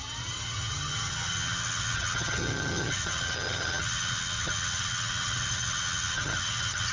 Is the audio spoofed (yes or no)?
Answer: yes